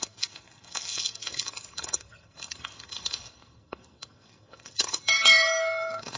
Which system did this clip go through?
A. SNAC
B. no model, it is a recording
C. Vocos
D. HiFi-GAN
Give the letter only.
A